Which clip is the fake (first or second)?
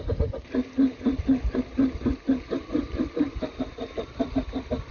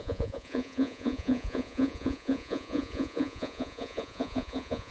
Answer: second